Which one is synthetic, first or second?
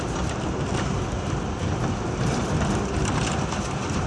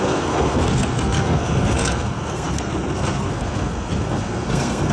second